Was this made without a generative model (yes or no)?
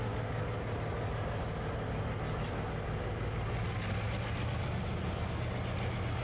yes